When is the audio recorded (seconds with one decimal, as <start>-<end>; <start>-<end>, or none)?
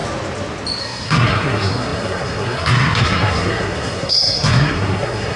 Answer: 0.0-0.8